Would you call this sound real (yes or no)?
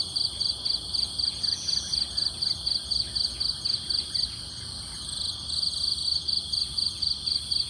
yes